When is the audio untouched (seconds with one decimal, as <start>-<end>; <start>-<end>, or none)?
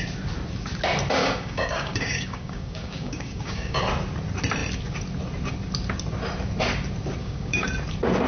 0.0-1.2; 3.8-7.2; 7.7-8.3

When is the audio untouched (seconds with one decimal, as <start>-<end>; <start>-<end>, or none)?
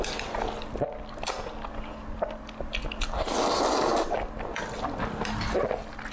0.0-6.1